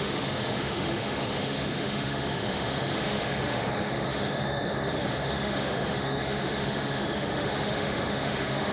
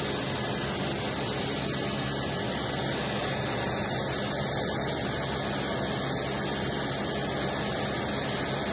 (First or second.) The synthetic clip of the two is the first